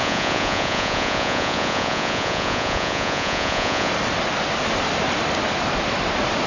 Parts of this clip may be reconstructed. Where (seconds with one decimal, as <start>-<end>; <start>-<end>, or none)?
0.0-3.9